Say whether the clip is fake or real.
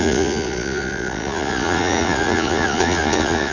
fake